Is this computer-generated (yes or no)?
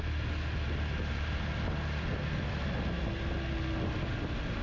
no